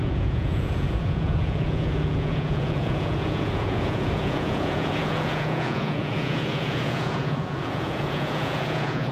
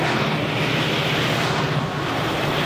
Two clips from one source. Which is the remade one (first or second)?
first